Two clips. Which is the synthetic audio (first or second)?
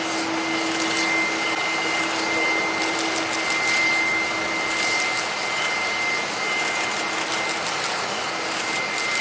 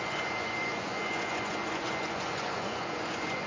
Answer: second